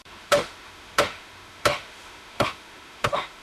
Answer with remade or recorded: remade